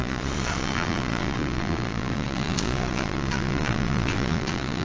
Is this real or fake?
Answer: fake